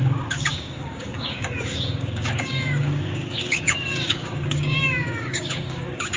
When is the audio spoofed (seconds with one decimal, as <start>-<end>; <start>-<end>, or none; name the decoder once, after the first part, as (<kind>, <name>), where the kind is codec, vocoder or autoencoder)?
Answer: 0.0-6.2 (codec, DAC)